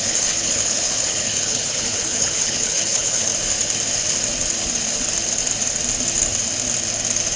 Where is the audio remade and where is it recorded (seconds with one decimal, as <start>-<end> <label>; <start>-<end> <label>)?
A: 0.0-3.3 remade; 3.3-7.4 recorded